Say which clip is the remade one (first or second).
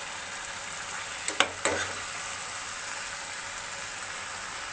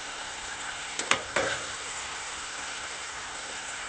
second